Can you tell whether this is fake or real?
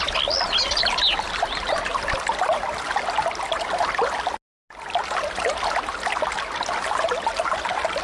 real